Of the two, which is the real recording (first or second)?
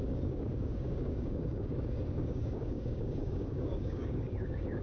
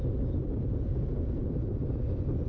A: second